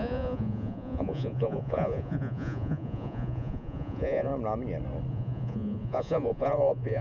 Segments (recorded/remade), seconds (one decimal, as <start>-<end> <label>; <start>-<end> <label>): 0.0-4.3 remade; 4.3-5.1 recorded; 5.1-7.0 remade